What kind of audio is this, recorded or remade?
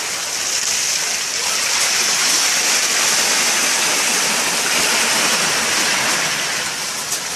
recorded